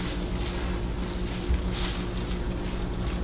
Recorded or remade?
recorded